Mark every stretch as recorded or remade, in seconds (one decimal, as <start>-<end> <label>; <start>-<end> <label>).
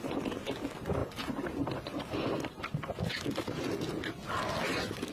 0.0-5.1 recorded